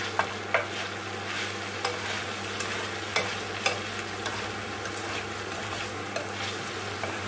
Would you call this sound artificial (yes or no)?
no